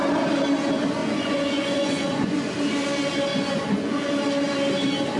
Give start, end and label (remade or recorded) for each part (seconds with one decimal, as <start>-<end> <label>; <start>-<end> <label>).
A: 0.0-1.0 recorded; 1.0-2.5 remade; 2.5-3.3 recorded; 3.3-4.1 remade; 4.1-5.2 recorded